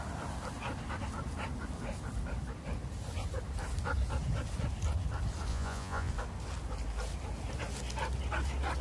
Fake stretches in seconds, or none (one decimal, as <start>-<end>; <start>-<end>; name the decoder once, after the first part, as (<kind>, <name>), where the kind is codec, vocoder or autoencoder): 5.5-6.1 (vocoder, Vocos)